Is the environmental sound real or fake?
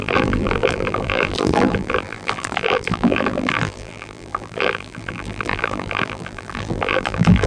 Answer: fake